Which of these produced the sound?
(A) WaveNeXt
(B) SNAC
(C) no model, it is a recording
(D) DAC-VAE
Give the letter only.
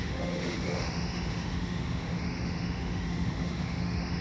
D